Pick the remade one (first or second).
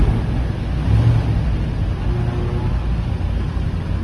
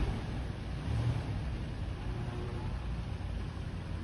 second